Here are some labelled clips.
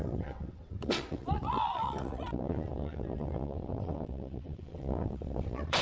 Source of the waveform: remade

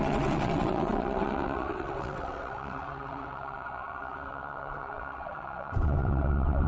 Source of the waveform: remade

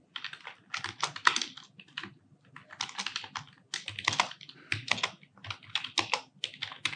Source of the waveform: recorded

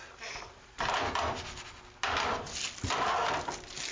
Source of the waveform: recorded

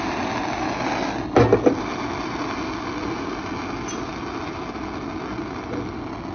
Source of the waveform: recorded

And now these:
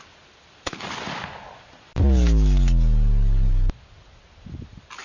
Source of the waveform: recorded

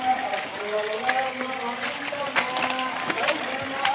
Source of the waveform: recorded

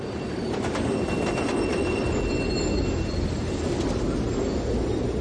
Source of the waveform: recorded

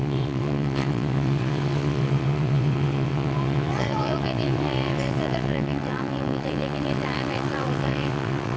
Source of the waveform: remade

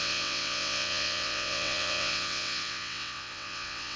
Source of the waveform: remade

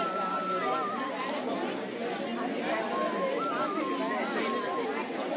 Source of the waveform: recorded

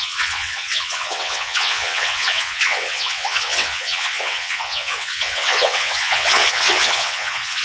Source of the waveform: remade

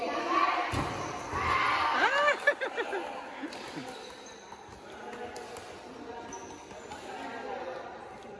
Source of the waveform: recorded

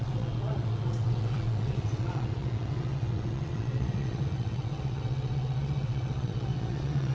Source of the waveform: remade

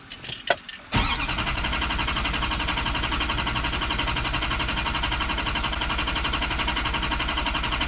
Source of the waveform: recorded